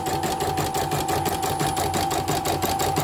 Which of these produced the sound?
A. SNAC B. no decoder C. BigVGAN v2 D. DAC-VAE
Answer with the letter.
B